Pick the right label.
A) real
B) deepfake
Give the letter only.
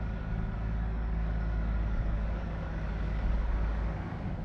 B